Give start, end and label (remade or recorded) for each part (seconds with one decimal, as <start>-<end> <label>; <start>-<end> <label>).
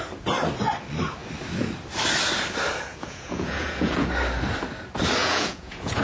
0.0-2.9 recorded; 2.9-4.1 remade; 4.1-5.2 recorded; 5.2-6.0 remade